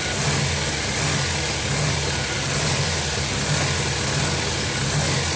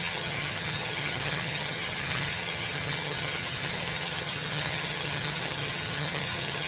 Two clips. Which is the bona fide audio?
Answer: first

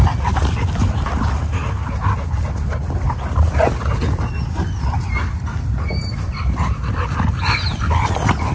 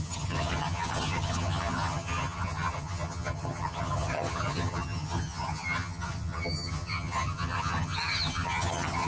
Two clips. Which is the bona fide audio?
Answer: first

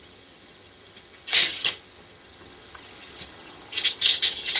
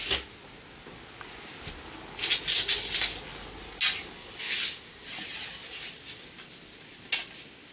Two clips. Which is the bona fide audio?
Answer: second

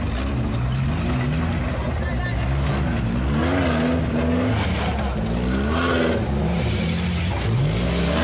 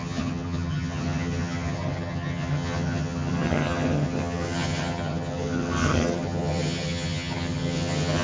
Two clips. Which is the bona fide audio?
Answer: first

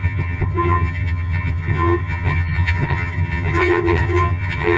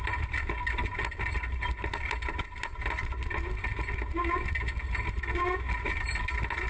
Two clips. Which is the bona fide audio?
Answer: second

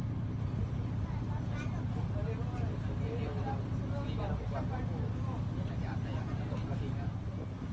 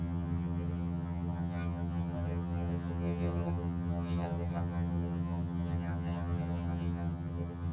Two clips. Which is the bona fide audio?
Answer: first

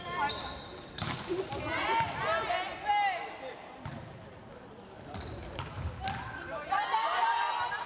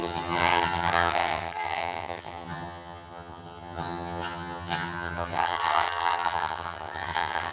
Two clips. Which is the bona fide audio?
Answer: first